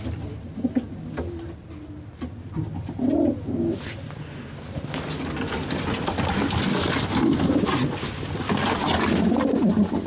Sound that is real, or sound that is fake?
real